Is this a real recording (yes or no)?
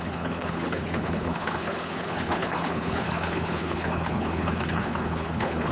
no